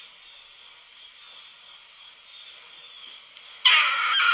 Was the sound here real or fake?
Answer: real